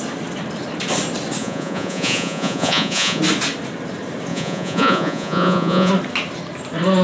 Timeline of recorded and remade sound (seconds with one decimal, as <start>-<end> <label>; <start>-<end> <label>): 0.0-1.4 recorded; 1.4-3.2 remade; 3.2-4.3 recorded; 4.3-5.9 remade; 5.9-7.0 recorded